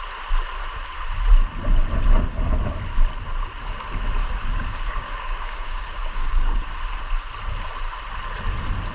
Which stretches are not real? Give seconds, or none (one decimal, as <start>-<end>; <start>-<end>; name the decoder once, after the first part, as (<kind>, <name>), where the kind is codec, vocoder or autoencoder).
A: 4.2-6.6 (codec, DAC)